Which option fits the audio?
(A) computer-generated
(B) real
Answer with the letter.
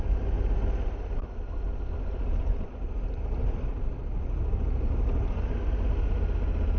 B